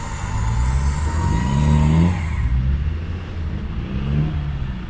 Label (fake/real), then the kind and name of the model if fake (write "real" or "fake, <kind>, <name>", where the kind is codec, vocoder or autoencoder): real